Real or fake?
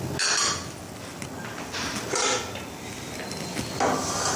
real